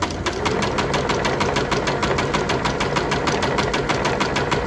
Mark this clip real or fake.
real